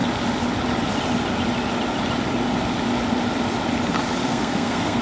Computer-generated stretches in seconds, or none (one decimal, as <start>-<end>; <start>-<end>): 4.2-5.0

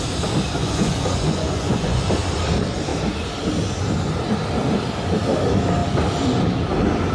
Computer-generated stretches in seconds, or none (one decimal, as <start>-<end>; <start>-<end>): 0.6-2.0

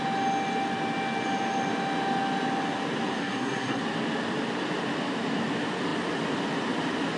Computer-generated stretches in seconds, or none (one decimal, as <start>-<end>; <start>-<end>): 3.2-3.8

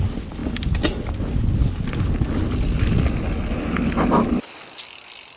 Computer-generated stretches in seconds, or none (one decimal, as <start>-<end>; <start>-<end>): none

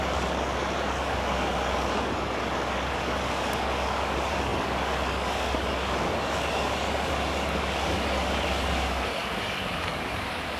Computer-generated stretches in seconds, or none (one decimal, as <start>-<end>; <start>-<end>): 0.0-10.6

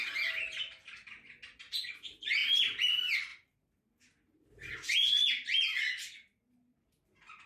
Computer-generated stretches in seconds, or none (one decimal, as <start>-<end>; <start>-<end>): none

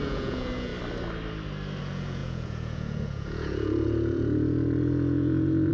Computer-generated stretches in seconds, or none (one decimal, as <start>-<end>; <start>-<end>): 0.0-0.7; 1.8-5.7

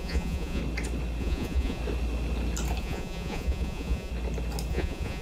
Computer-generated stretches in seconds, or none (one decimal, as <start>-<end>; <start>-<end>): 0.0-0.6; 1.2-1.8; 2.8-4.1; 4.7-5.2